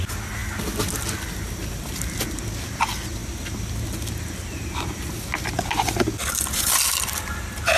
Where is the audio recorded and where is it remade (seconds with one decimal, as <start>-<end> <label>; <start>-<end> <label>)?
0.0-7.8 recorded